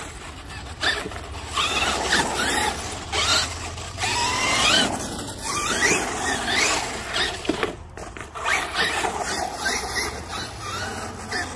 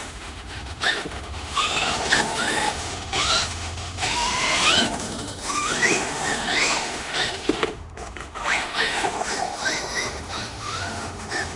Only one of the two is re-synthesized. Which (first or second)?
second